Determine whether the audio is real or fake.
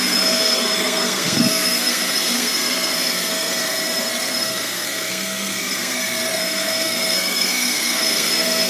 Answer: fake